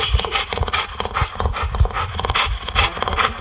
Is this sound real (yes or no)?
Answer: yes